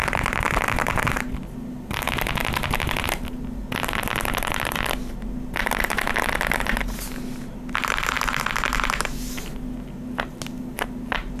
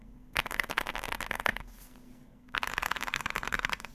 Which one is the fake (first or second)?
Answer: second